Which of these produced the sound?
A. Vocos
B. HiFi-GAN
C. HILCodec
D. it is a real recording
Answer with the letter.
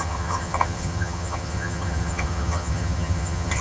B